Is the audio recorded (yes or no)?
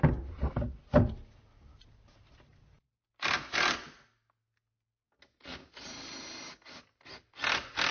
yes